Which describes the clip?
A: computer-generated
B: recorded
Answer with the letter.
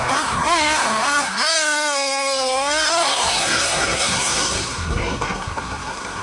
A